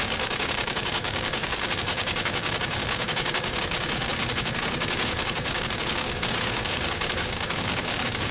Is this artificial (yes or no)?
yes